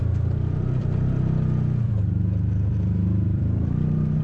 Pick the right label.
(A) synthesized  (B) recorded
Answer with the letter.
A